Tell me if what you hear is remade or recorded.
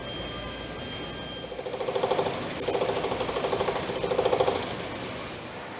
recorded